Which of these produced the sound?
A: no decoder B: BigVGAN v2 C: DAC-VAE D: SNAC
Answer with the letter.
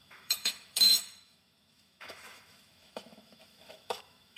C